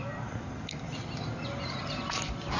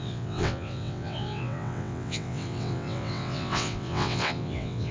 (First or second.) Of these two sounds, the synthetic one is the second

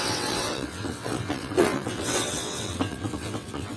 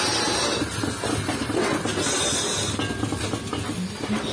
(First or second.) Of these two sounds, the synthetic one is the first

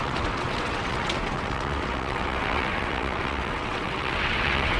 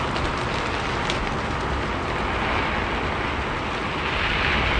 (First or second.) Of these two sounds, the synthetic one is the first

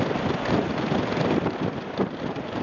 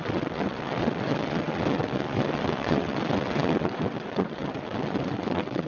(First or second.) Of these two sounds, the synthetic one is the second